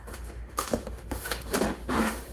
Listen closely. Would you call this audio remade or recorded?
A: remade